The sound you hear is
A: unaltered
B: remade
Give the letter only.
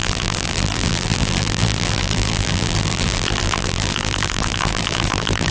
B